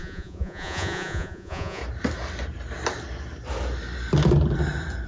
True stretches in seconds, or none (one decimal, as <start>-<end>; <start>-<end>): 1.8-5.1